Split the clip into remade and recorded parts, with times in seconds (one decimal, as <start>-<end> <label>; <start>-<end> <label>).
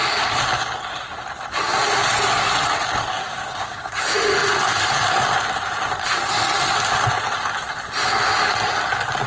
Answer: 0.0-3.3 recorded; 3.3-4.0 remade; 4.0-9.3 recorded